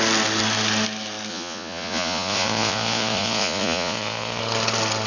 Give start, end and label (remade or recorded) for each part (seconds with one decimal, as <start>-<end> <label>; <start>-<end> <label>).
0.0-1.3 recorded; 1.3-4.4 remade; 4.4-5.1 recorded